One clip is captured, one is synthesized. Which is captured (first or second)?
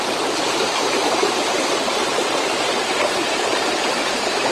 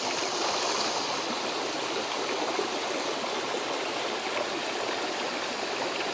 second